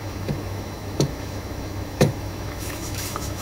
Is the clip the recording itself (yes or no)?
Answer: no